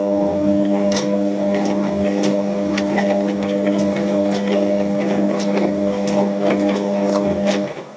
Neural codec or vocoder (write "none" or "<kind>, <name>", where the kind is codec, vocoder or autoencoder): codec, DAC